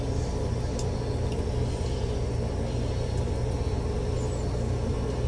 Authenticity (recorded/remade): recorded